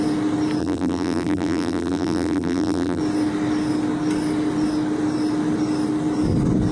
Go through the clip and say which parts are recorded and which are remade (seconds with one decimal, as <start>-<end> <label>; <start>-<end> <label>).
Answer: 0.0-0.6 recorded; 0.6-3.0 remade; 3.0-6.7 recorded